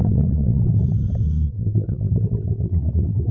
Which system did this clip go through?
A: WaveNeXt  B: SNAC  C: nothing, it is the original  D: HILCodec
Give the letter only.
A